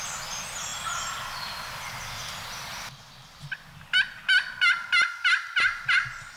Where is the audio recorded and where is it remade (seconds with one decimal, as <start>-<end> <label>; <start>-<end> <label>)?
0.0-6.4 recorded